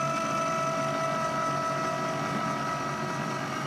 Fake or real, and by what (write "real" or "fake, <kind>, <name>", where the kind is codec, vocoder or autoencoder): real